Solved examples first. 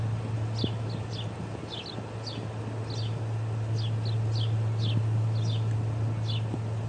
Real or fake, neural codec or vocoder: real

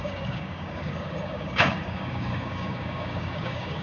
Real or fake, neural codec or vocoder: fake, codec, DAC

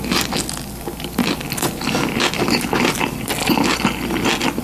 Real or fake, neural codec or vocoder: real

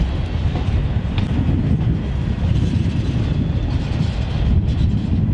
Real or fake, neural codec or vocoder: real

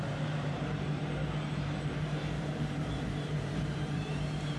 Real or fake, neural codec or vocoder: fake, vocoder, BigVGAN v2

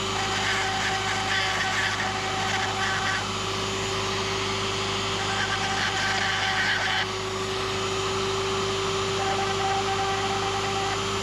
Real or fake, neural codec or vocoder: real